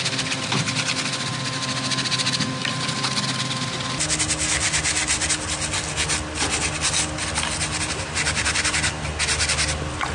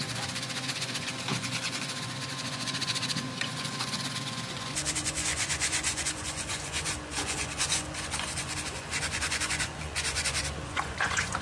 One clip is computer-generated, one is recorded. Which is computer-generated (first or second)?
second